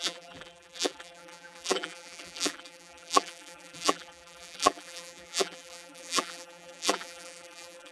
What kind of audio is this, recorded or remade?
remade